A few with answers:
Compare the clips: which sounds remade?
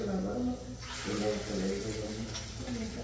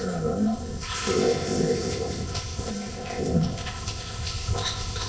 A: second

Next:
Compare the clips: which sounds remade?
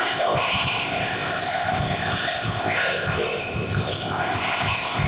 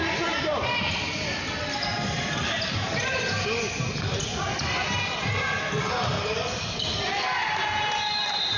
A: first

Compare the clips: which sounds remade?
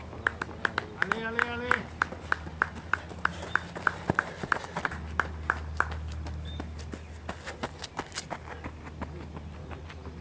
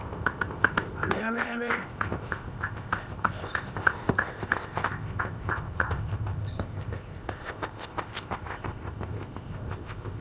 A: second